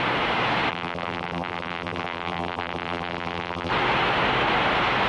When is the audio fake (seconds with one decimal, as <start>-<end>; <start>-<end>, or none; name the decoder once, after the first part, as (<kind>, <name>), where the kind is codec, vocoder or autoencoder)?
0.7-3.7 (vocoder, BigVGAN v2)